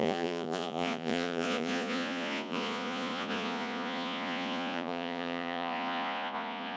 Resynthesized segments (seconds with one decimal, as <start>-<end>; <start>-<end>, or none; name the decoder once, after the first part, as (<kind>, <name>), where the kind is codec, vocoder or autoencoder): 0.0-6.8 (vocoder, Vocos)